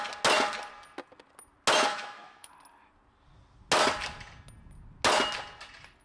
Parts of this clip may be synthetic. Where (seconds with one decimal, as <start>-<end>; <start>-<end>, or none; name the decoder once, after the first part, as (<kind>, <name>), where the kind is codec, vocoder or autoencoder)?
1.9-2.5 (autoencoder, DAC-VAE)